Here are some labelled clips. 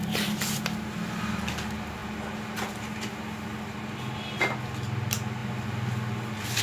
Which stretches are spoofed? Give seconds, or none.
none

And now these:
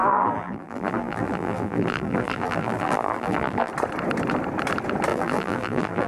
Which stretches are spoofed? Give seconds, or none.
0.0-3.7 (vocoder, BigVGAN v2); 5.1-6.1

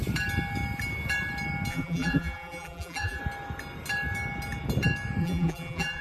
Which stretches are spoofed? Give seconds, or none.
1.7-3.2 (vocoder, BigVGAN v2); 5.2-6.0

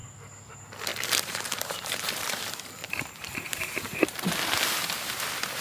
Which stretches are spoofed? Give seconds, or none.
0.9-4.3 (vocoder, BigVGAN v2)

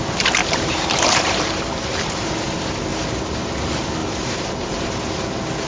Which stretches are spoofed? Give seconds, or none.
0.4-2.3 (vocoder, BigVGAN v2); 2.9-3.5; 4.0-4.9

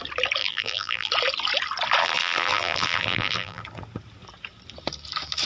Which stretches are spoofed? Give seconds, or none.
0.4-1.1 (vocoder, BigVGAN v2); 2.0-3.6

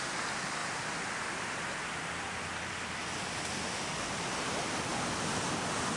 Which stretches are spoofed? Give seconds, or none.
0.6-4.2 (vocoder, BigVGAN v2)

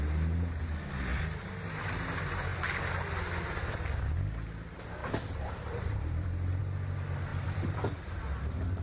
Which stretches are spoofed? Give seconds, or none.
1.1-1.9 (vocoder, BigVGAN v2); 5.0-6.6; 7.3-8.2